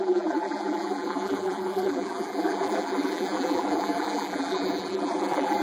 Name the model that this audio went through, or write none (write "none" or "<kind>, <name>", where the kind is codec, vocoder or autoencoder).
vocoder, BigVGAN v2